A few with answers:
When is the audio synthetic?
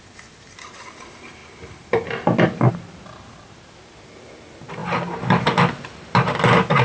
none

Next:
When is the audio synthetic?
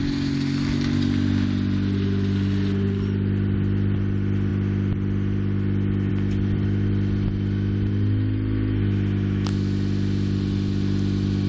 none